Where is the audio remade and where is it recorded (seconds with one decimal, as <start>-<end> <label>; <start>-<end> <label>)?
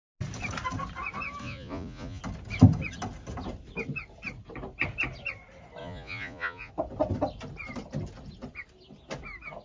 0.0-1.4 recorded; 1.4-2.2 remade; 2.2-5.8 recorded; 5.8-6.7 remade; 6.7-9.6 recorded